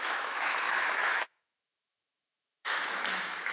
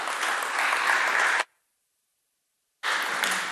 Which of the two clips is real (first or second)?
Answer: second